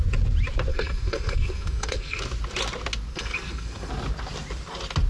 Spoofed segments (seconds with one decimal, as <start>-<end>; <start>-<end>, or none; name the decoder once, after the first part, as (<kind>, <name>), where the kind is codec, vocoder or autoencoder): 0.7-2.2 (codec, SNAC); 3.1-3.9